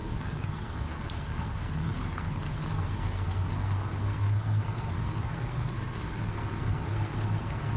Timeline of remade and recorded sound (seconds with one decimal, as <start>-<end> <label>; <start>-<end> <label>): 0.0-7.8 remade